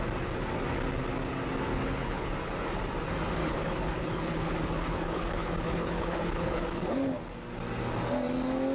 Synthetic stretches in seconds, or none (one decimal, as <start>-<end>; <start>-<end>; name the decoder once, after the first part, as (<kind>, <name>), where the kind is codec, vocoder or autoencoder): 1.7-2.3 (codec, HILCodec); 3.4-7.2